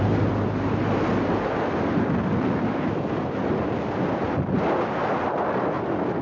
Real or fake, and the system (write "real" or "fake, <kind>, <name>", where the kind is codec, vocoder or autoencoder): real